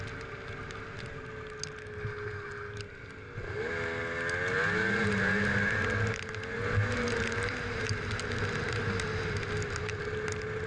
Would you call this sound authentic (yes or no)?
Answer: yes